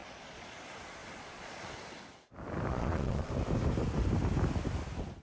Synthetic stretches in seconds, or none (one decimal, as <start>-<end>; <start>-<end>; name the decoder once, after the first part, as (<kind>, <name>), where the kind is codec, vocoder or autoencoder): 0.0-0.6 (vocoder, Vocos); 1.0-1.7; 2.7-3.3